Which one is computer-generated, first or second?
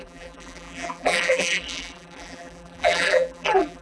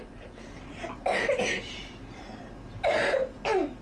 first